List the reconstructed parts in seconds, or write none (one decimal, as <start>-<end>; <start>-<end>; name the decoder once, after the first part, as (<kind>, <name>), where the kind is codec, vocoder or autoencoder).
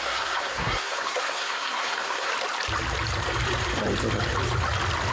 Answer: 0.0-2.3 (codec, SNAC)